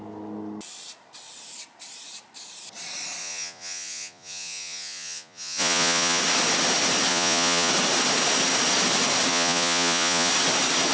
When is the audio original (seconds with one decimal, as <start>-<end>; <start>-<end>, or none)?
0.0-3.2; 6.2-7.1; 7.7-9.3; 10.3-10.9